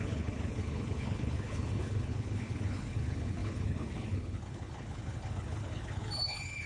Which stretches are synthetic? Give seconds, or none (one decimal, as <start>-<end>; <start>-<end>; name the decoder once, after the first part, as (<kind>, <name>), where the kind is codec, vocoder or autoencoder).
0.0-6.7 (codec, HILCodec)